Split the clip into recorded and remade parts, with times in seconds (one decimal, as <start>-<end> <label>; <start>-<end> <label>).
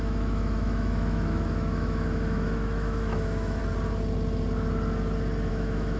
0.0-3.6 remade; 3.6-5.5 recorded; 5.5-6.0 remade